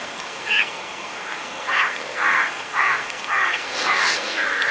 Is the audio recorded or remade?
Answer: remade